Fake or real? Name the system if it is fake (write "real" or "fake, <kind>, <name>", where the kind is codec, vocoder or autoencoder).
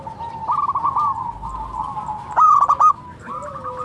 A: real